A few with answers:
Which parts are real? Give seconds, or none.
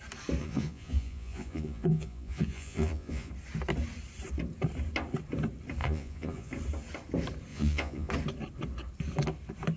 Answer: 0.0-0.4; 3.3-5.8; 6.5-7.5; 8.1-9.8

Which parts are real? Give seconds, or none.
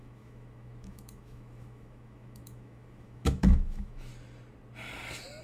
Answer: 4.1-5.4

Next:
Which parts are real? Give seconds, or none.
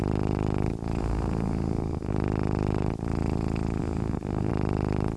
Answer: 0.0-1.0; 2.1-3.8; 4.5-5.2